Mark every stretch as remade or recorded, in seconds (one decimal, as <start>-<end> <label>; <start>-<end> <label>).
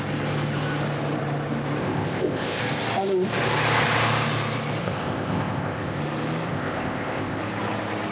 0.0-1.8 recorded; 1.8-2.6 remade; 2.6-4.8 recorded; 4.8-6.0 remade; 6.0-6.5 recorded; 6.5-7.4 remade; 7.4-8.1 recorded